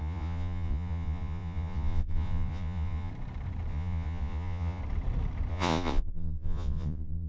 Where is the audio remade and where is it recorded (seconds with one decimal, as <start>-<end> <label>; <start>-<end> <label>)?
0.0-3.1 remade; 3.1-3.7 recorded; 3.7-4.8 remade; 4.8-5.5 recorded; 5.5-7.3 remade